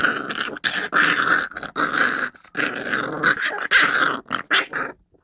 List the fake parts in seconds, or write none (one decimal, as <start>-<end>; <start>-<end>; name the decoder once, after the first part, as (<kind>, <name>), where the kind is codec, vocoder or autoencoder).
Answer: none